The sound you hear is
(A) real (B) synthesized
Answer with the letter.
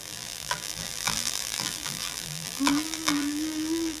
B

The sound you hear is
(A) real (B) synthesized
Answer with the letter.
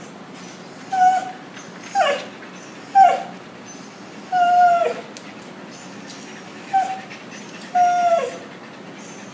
A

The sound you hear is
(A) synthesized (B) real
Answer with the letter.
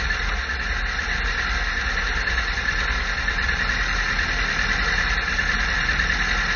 B